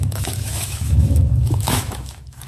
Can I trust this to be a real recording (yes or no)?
no